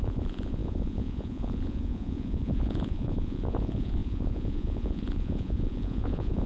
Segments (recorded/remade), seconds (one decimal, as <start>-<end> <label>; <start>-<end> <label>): 0.0-6.5 remade